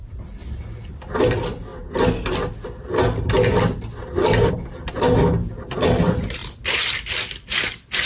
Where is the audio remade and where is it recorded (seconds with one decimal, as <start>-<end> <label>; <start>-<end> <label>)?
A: 0.0-8.1 recorded